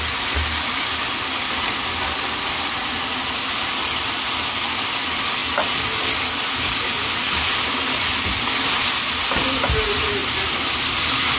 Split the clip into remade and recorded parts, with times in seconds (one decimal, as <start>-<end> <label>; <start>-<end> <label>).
0.0-11.4 recorded